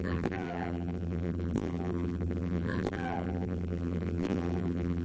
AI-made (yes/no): yes